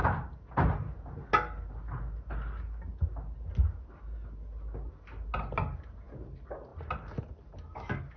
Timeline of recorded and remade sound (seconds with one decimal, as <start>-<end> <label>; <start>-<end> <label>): 0.0-8.2 recorded